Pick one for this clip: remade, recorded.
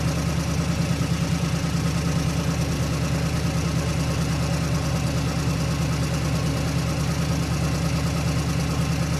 recorded